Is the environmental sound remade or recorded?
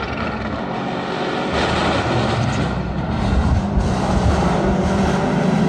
recorded